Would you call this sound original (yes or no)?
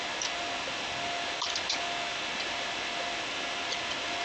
yes